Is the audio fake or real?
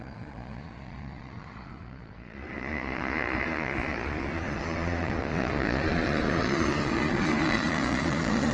fake